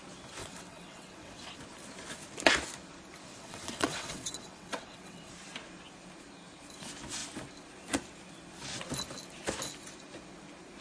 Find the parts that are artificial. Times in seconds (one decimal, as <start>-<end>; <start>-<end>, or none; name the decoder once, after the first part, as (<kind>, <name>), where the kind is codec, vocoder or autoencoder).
0.4-1.6 (vocoder, WaveNeXt); 3.3-5.3